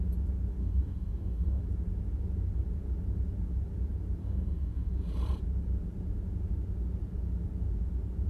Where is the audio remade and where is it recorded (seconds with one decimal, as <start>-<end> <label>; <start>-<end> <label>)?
0.0-0.6 recorded; 0.6-1.6 remade; 1.6-4.2 recorded; 4.2-4.9 remade; 4.9-8.3 recorded